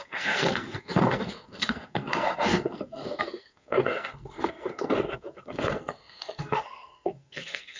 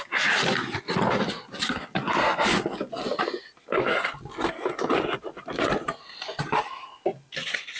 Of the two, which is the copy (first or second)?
first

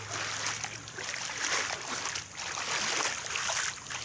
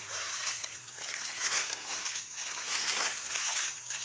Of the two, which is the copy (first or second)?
second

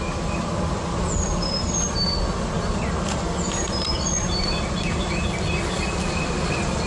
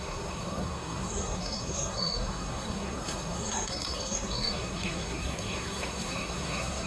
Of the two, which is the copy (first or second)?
second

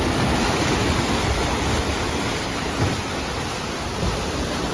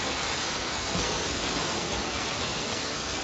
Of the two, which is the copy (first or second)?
second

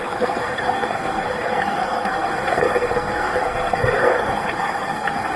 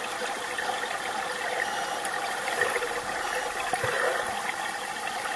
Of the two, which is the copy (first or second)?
first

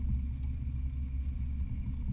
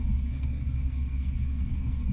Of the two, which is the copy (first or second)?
second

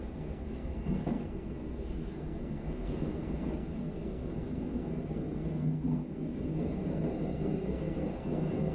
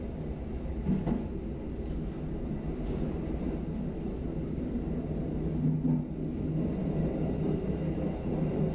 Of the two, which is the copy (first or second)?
first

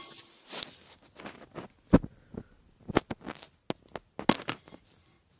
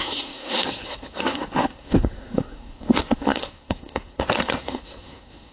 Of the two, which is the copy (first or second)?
second